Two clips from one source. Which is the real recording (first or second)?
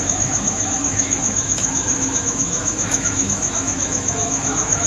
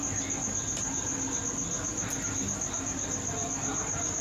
second